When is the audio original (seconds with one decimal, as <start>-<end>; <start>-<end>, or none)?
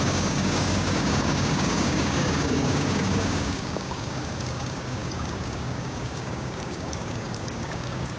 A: none